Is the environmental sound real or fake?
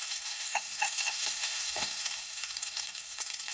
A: fake